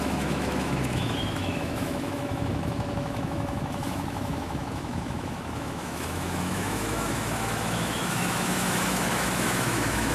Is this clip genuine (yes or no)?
no